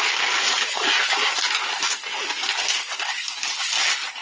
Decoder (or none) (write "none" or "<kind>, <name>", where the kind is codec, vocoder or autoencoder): none